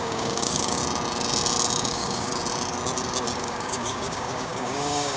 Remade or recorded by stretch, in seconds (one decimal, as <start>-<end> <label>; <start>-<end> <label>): 0.0-0.8 remade; 0.8-1.9 recorded; 1.9-2.3 remade; 2.3-3.4 recorded; 3.4-5.2 remade